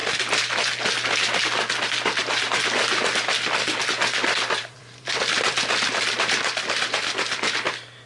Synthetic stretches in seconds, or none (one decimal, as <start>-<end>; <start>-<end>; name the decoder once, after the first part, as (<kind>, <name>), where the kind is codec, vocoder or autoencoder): 3.8-8.1 (vocoder, BigVGAN v2)